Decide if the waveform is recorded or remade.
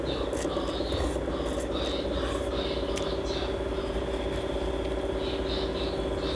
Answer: recorded